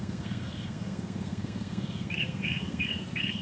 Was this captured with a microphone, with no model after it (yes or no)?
no